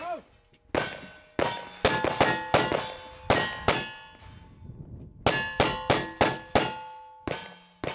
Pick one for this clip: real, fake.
real